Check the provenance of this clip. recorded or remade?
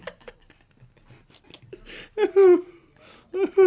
recorded